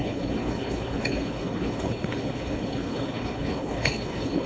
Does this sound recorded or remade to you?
remade